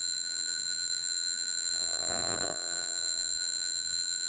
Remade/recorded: remade